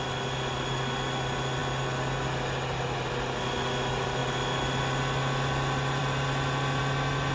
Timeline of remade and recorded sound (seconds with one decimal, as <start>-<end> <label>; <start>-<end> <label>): 0.0-7.3 recorded